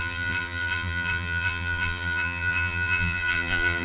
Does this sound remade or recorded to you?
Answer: remade